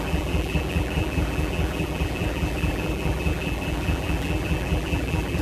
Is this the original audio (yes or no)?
no